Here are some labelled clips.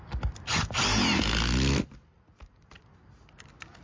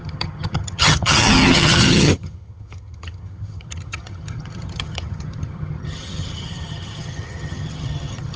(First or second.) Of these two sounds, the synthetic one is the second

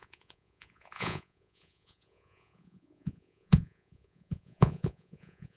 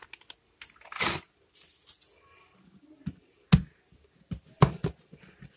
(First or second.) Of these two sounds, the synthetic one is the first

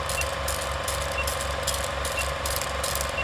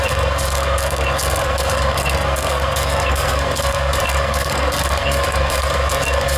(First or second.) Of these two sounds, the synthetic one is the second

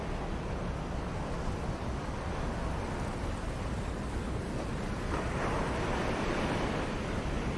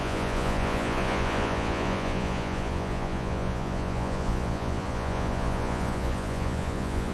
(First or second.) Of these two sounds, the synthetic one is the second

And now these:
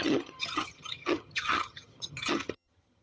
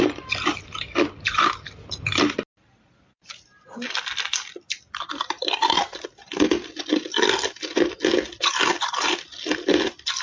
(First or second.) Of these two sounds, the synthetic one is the first